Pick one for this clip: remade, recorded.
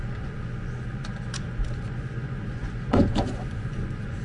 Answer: remade